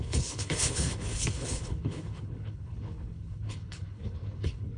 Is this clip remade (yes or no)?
yes